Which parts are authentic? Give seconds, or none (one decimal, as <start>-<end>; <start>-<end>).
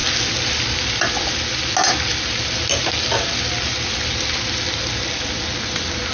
0.0-6.1